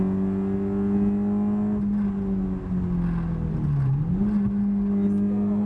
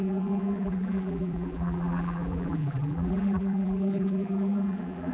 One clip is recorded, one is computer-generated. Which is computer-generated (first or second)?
second